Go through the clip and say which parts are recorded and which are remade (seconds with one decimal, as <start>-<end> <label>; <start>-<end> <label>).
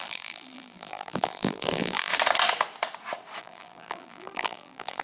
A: 0.0-2.1 remade; 2.1-3.4 recorded; 3.4-5.0 remade